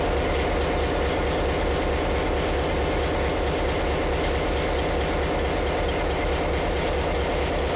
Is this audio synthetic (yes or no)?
no